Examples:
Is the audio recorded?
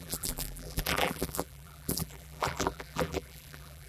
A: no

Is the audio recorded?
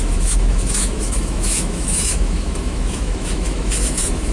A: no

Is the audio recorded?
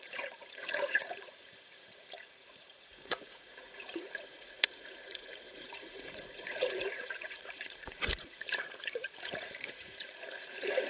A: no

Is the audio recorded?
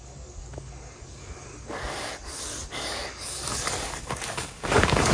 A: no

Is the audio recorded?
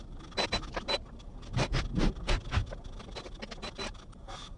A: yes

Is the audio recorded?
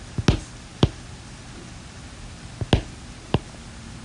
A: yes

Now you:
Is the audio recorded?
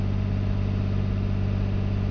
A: yes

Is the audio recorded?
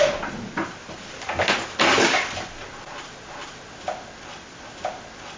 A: yes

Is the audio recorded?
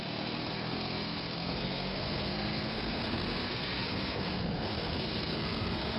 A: no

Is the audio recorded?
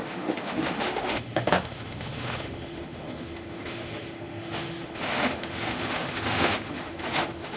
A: no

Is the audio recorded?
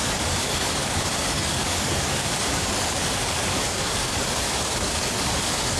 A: no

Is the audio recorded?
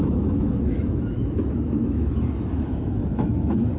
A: no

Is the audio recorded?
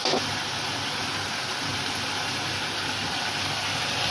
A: yes